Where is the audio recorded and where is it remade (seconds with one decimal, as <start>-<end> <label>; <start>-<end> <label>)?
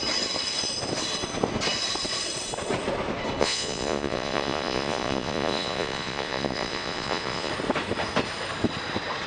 0.0-3.4 recorded; 3.4-7.5 remade; 7.5-9.3 recorded